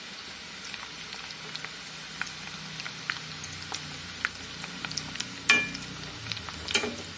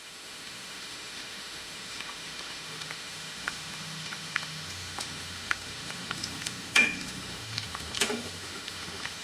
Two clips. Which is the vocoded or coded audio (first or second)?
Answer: second